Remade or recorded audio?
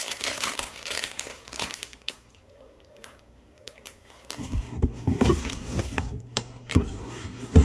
remade